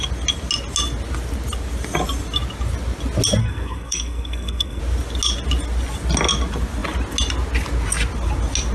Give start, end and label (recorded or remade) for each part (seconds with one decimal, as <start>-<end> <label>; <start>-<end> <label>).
0.0-3.4 recorded; 3.4-4.8 remade; 4.8-8.7 recorded